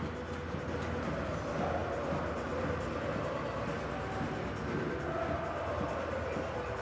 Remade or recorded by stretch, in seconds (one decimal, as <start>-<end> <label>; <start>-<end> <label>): 0.0-6.8 recorded